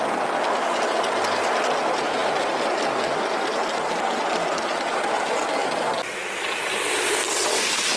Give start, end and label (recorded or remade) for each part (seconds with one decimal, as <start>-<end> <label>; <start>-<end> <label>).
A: 0.0-8.0 recorded